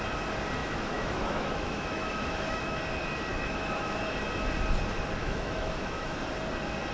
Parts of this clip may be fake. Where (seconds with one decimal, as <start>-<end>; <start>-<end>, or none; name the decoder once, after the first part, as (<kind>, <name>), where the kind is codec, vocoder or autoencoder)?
0.6-2.8 (autoencoder, DAC-VAE); 3.3-3.9; 5.2-6.2